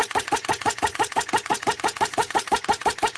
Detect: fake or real fake